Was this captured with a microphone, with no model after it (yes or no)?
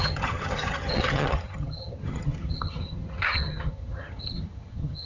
no